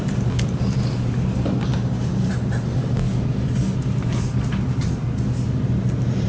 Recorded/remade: recorded